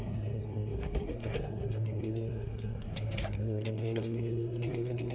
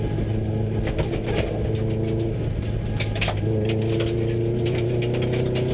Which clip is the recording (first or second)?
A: second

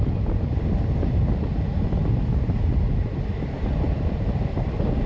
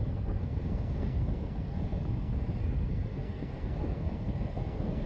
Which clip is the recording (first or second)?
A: first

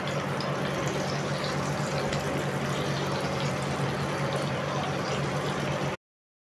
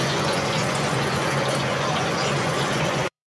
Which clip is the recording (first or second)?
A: first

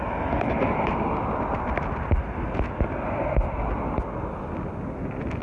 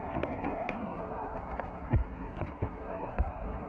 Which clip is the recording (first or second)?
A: first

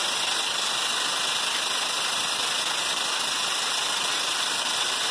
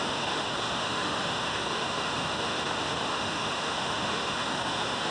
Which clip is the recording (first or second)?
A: first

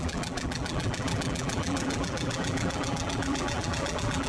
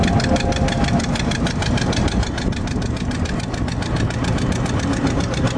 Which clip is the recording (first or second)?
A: second